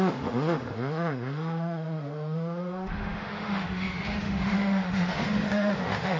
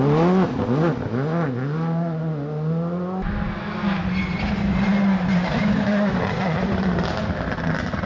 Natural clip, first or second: second